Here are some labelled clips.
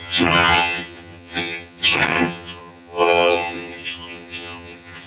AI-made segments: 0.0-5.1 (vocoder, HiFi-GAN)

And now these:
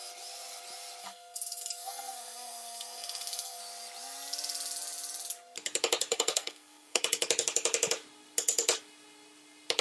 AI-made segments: 1.0-3.6 (codec, SNAC); 6.1-7.0

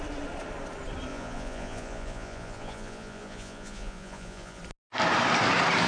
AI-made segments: 1.1-4.6 (vocoder, Vocos)